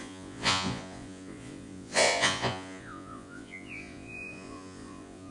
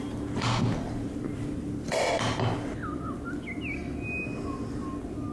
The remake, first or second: first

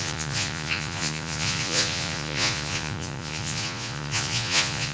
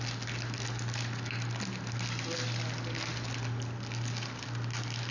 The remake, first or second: first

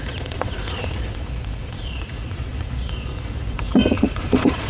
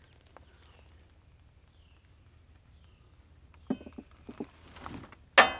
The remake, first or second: first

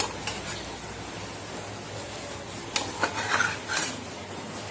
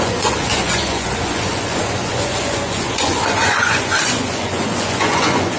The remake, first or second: second